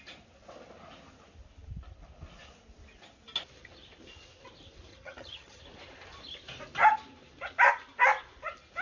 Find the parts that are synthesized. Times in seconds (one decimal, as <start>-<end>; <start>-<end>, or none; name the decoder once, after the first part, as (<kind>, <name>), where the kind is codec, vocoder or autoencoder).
4.9-5.6 (vocoder, HiFi-GAN)